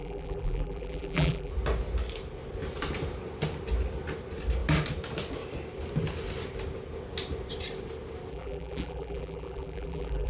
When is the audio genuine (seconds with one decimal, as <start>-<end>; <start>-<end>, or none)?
1.5-8.3